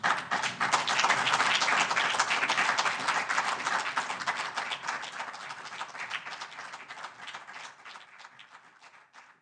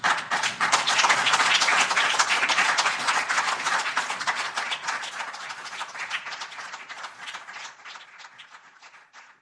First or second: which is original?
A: first